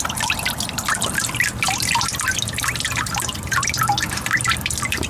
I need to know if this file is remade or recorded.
recorded